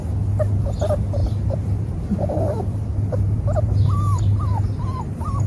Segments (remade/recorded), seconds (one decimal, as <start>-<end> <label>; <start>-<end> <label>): 0.0-1.2 recorded; 1.2-4.2 remade; 4.2-5.5 recorded